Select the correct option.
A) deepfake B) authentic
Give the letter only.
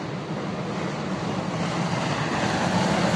B